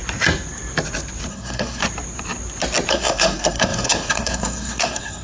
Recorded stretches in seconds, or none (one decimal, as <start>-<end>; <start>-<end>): 0.0-1.3; 1.8-2.9